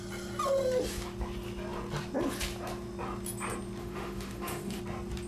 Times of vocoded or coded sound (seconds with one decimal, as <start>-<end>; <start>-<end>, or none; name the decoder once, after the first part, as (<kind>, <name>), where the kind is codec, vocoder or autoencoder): 3.8-4.8 (autoencoder, DAC-VAE)